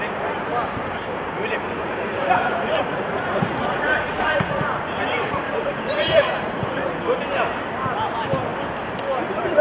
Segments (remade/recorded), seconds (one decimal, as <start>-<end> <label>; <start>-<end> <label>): 0.0-1.8 recorded; 1.8-7.0 remade; 7.0-9.6 recorded